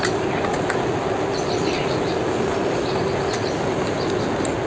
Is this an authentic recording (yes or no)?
yes